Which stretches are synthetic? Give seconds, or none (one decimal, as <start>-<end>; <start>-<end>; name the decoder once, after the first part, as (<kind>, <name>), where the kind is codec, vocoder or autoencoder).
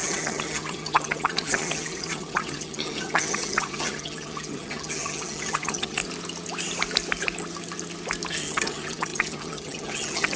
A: 0.0-6.0 (vocoder, HiFi-GAN); 8.3-10.4